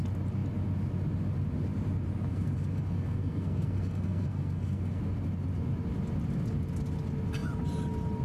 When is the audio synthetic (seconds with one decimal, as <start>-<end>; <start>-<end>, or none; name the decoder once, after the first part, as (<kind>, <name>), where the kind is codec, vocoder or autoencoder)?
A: 2.3-5.0 (codec, SNAC)